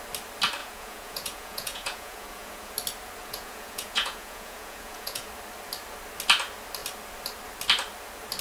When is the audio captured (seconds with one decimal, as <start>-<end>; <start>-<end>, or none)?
0.0-0.6; 2.7-3.2; 5.3-8.4

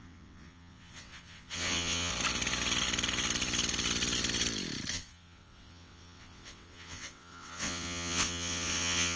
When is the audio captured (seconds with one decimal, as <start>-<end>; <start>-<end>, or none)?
2.1-4.9

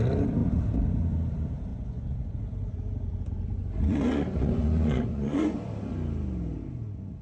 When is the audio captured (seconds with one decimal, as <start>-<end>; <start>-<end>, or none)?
0.0-1.7; 2.4-3.5; 5.7-7.2

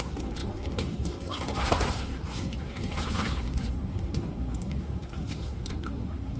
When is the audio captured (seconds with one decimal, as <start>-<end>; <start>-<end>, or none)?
none

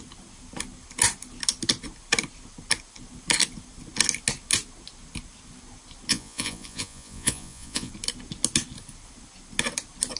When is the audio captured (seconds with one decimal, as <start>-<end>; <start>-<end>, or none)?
0.0-6.1; 7.9-10.2

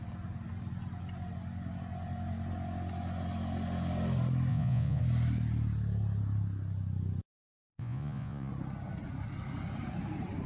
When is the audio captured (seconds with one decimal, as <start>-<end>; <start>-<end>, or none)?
0.0-4.5; 5.0-7.7; 8.5-10.5